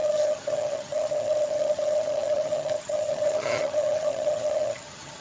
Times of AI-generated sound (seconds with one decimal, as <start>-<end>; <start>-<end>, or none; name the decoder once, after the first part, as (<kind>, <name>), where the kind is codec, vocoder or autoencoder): 0.0-5.2 (vocoder, HiFi-GAN)